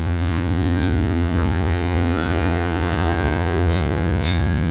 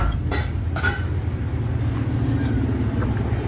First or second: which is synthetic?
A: first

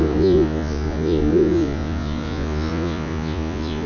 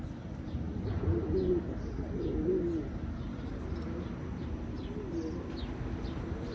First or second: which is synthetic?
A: first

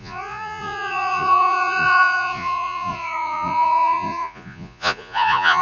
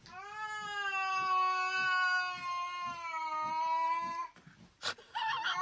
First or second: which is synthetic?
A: first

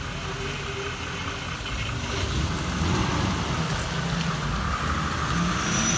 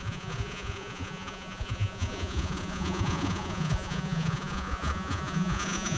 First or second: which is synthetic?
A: second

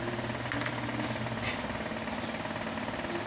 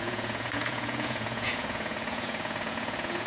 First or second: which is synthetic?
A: second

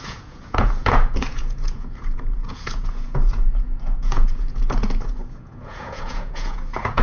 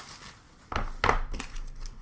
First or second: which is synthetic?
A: first